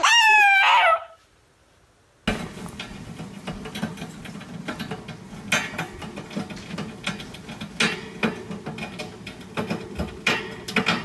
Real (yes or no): yes